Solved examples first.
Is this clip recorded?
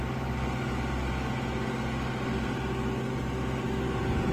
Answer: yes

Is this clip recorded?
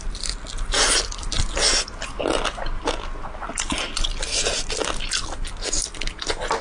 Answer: yes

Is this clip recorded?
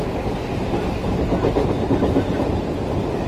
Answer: yes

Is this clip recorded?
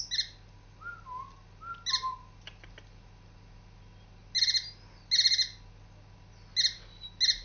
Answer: yes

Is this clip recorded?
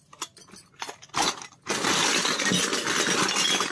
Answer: yes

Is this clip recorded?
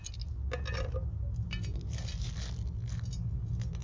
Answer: yes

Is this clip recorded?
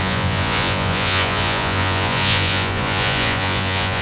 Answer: no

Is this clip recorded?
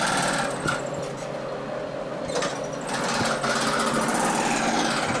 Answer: yes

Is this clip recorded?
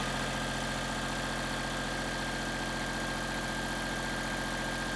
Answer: yes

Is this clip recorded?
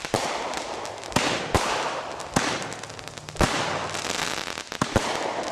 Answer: yes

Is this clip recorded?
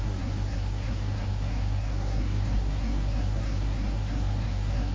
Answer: no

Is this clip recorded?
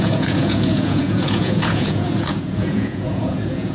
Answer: no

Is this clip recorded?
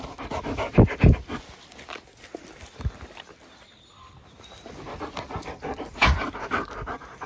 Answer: yes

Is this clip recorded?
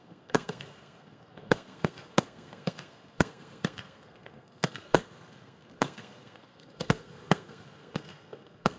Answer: no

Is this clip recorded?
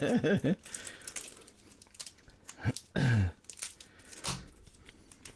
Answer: yes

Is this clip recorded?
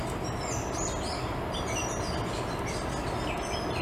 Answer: yes